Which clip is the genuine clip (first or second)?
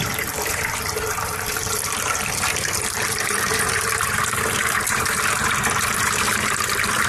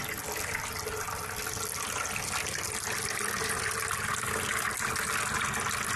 second